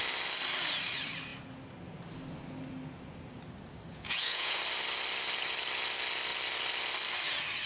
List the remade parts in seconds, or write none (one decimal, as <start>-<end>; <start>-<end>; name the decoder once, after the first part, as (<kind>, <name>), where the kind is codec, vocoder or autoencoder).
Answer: 3.9-4.6 (vocoder, Vocos)